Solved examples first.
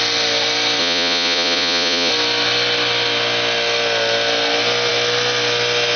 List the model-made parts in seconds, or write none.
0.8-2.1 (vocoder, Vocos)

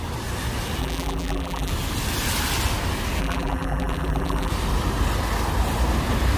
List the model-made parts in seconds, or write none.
0.8-1.7 (vocoder, BigVGAN v2); 3.2-4.5

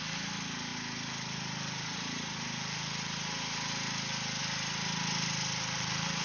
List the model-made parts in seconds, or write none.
none

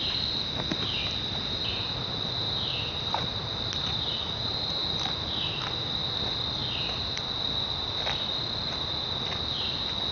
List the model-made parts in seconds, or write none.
none

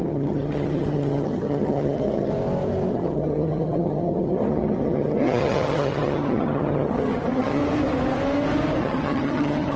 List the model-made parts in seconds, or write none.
0.0-2.3 (vocoder, HiFi-GAN); 2.9-7.6; 8.8-9.8

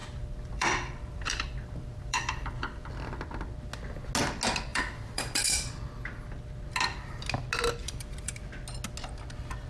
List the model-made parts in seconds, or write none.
0.0-2.9 (vocoder, BigVGAN v2); 4.7-5.8; 7.8-8.4

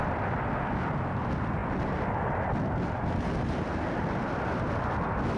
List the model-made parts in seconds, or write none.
none

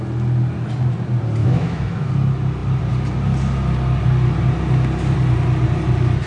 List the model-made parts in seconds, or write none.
1.4-2.1 (autoencoder, DAC-VAE)